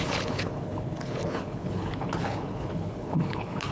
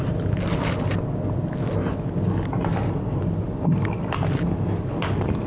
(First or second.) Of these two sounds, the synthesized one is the first